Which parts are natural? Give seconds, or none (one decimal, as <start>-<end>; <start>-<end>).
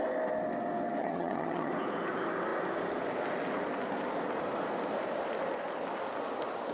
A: 0.0-1.0; 1.7-6.7